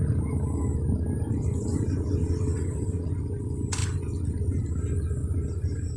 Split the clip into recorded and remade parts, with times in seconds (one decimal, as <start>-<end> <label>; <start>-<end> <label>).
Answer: 0.0-2.2 recorded; 2.2-3.1 remade; 3.1-6.0 recorded

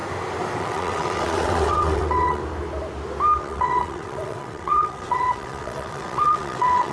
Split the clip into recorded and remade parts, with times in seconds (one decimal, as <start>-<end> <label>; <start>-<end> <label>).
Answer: 0.0-0.6 recorded; 0.6-2.4 remade; 2.4-3.4 recorded; 3.4-6.9 remade

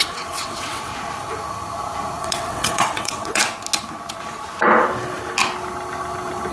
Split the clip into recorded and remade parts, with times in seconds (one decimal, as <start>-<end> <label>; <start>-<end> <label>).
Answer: 0.0-0.9 remade; 0.9-2.2 recorded; 2.2-3.4 remade; 3.4-6.5 recorded

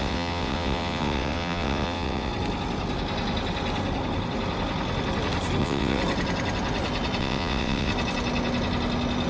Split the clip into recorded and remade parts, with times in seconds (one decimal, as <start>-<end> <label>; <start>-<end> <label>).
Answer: 0.0-2.3 remade; 2.3-5.6 recorded; 5.6-6.0 remade; 6.0-7.2 recorded; 7.2-7.9 remade; 7.9-9.3 recorded

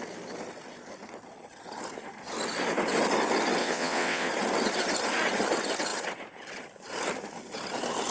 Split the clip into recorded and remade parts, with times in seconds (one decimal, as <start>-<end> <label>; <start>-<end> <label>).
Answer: 0.0-3.6 recorded; 3.6-4.3 remade; 4.3-8.1 recorded

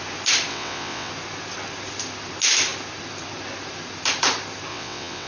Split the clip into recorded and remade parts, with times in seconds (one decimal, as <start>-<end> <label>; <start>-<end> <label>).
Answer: 0.0-0.5 recorded; 0.5-1.1 remade; 1.1-4.7 recorded; 4.7-5.3 remade